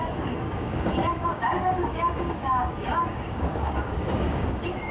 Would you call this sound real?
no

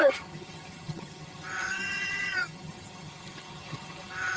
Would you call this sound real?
no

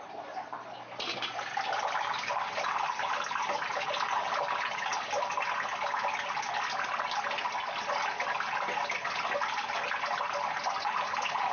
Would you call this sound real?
yes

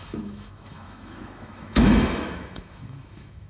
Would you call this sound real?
no